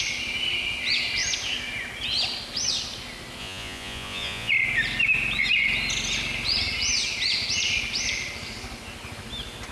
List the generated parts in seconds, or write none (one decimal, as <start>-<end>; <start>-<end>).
3.4-4.5